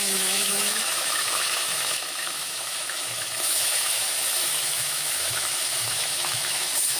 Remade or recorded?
remade